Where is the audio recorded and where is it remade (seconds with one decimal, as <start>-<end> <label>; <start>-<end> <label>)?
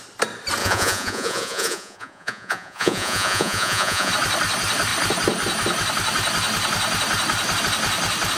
0.0-0.6 recorded; 0.6-4.1 remade; 4.1-8.4 recorded